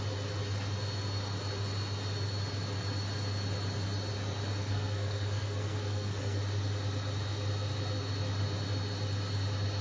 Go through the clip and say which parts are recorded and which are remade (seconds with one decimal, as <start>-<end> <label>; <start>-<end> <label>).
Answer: 0.0-4.6 recorded; 4.6-6.4 remade; 6.4-9.8 recorded